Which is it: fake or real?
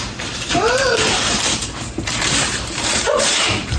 fake